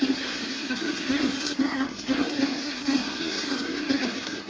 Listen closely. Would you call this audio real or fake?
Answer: fake